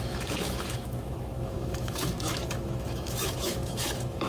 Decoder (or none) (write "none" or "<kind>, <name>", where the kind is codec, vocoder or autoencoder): autoencoder, DAC-VAE